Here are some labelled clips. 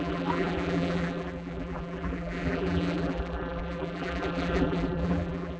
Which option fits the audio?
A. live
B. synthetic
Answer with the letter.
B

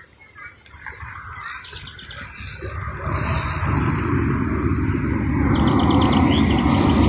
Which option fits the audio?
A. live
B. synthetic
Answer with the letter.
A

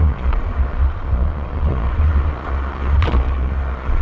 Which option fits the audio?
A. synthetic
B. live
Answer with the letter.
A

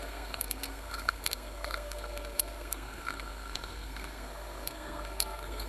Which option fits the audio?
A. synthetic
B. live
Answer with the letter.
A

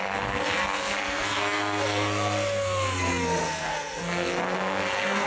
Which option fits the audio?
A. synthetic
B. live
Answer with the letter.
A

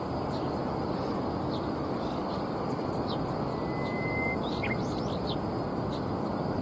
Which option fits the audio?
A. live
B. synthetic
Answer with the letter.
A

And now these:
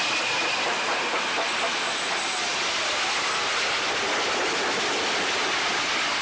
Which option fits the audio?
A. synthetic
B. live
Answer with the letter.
B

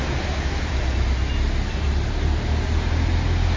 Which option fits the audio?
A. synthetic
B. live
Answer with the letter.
B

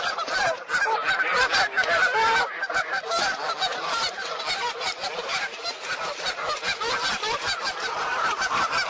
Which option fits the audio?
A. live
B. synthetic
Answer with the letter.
A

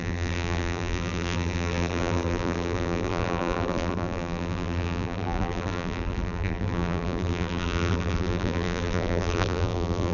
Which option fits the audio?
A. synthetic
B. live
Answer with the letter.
A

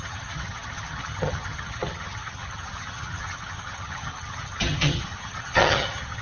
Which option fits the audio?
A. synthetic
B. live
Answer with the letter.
A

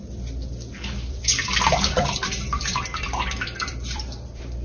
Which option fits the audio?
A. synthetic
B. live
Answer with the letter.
A